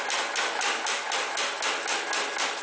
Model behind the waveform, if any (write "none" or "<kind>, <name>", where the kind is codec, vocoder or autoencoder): none